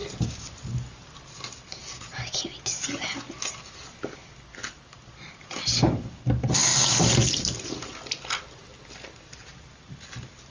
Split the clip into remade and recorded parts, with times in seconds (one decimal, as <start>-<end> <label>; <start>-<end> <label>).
0.0-10.5 recorded